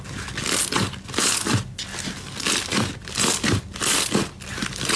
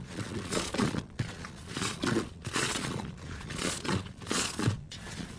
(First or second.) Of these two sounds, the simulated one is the second